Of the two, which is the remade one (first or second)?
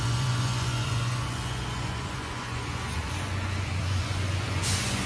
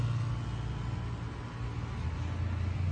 first